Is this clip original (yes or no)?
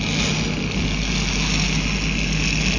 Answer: yes